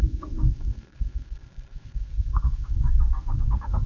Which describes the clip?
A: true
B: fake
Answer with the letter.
B